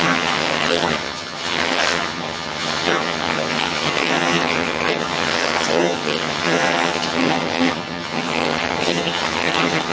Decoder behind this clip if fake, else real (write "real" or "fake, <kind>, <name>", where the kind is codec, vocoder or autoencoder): fake, vocoder, HiFi-GAN